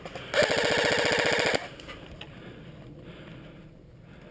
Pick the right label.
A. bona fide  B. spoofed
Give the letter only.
A